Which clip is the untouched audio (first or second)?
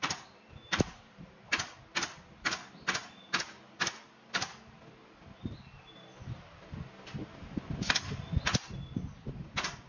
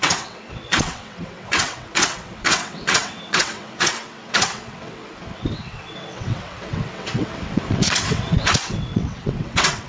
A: first